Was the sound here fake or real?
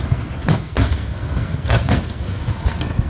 fake